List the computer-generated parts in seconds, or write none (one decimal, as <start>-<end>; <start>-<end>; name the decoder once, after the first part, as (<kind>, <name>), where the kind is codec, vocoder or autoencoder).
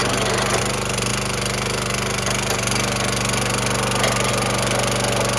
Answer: none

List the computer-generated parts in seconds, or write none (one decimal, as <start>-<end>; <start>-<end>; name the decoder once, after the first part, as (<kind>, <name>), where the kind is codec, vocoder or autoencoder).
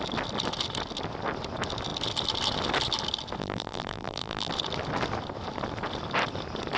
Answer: 3.4-4.5 (vocoder, BigVGAN v2)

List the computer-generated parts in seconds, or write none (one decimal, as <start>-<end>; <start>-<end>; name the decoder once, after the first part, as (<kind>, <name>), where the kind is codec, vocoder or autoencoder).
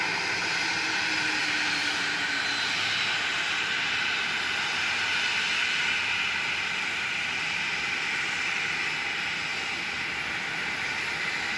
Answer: none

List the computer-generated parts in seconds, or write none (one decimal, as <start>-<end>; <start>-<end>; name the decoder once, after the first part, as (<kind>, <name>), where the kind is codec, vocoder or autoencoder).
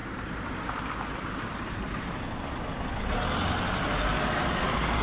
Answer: none